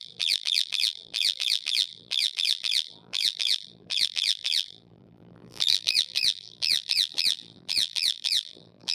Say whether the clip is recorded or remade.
remade